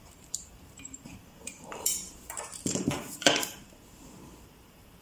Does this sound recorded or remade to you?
remade